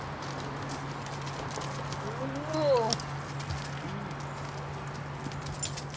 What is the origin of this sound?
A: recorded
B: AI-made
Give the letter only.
A